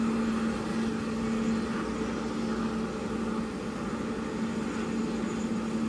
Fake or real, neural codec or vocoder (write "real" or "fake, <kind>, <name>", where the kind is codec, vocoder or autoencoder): real